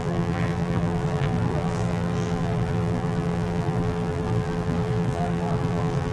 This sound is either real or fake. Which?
fake